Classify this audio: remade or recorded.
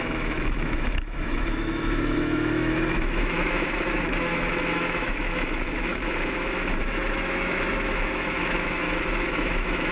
remade